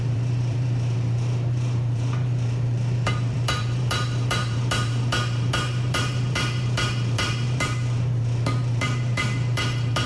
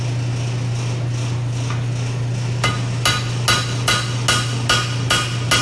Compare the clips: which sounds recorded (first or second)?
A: second